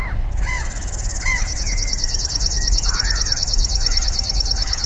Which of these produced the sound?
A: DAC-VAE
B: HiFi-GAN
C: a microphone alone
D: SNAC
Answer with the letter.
A